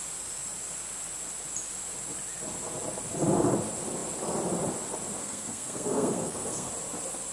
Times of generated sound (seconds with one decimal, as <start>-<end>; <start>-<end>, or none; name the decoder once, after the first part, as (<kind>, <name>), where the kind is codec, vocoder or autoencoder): 5.2-6.7 (codec, SNAC)